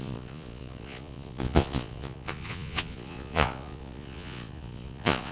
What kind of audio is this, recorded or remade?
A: remade